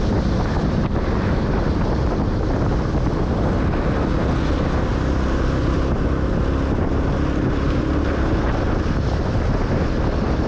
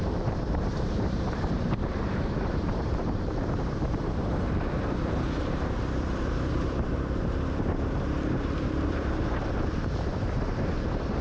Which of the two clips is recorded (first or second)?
first